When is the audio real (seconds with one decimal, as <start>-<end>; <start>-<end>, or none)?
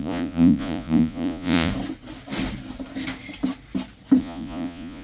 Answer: 1.7-4.2